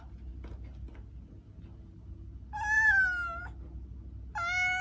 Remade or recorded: recorded